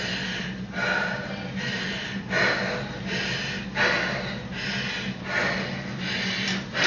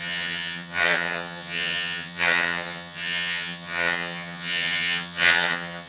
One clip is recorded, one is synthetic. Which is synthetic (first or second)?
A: second